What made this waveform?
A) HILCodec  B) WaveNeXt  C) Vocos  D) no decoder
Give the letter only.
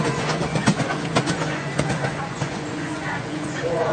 C